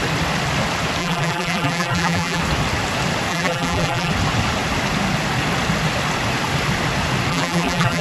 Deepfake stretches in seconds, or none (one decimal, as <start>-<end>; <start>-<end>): 1.0-2.4; 3.3-4.1; 7.3-8.0